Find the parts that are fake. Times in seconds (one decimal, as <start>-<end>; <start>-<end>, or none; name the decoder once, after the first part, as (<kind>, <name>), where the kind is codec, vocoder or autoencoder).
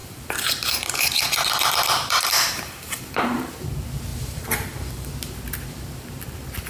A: 0.0-3.5 (vocoder, BigVGAN v2); 4.1-5.1